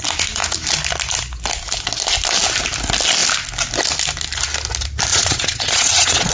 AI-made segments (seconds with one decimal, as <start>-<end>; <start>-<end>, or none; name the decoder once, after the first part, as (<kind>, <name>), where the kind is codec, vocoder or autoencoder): 5.1-6.3 (vocoder, Vocos)